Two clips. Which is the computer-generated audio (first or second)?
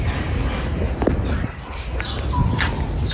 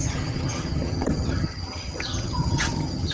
second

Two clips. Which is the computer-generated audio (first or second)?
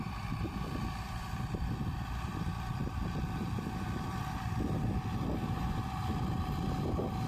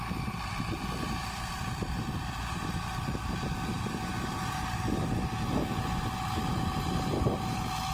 first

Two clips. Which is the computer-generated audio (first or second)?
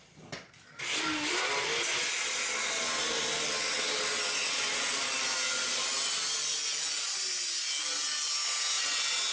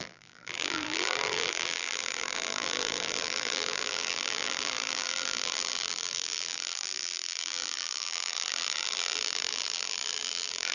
second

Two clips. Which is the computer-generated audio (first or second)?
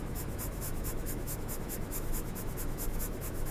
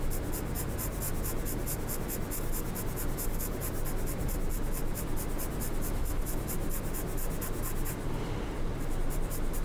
first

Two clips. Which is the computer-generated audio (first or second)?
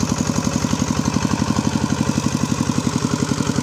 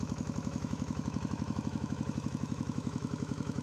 second